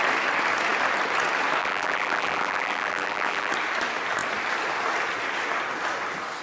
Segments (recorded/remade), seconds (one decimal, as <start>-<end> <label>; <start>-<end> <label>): 0.0-1.6 recorded; 1.6-3.5 remade; 3.5-6.4 recorded